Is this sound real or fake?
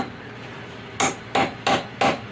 real